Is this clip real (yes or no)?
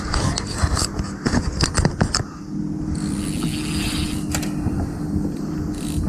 yes